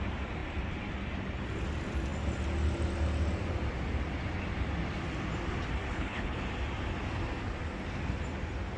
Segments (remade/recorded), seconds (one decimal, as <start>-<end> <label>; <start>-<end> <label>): 0.0-5.9 recorded; 5.9-6.4 remade; 6.4-8.8 recorded